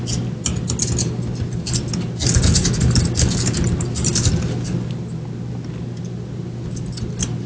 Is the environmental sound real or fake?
real